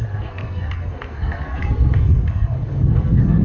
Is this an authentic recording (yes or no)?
no